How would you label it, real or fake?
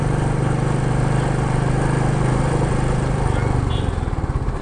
real